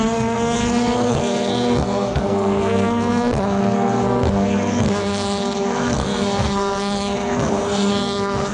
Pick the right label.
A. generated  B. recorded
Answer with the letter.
A